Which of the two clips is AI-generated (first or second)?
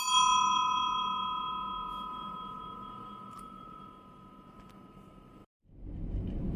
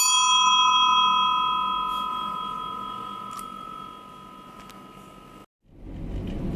first